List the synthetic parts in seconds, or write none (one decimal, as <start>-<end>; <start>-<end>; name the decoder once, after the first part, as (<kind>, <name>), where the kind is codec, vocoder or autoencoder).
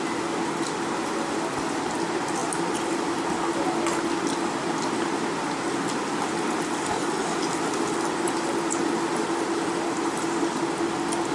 none